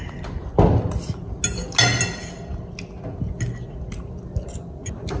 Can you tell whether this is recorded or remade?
recorded